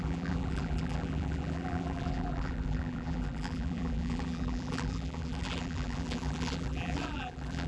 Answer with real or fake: fake